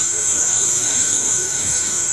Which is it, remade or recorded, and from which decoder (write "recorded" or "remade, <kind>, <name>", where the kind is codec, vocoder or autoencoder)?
remade, codec, DAC